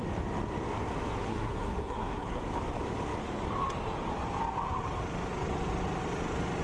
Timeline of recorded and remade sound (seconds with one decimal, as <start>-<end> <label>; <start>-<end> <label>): 0.0-1.2 recorded; 1.2-2.4 remade; 2.4-6.6 recorded